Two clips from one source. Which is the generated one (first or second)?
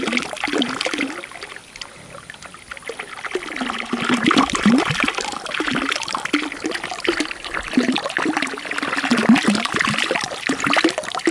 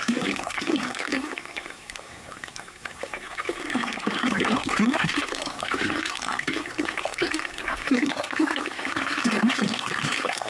second